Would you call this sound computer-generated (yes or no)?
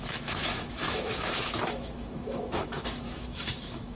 yes